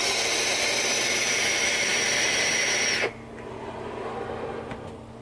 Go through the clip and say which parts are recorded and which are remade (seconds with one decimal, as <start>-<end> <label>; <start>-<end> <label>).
0.0-5.2 recorded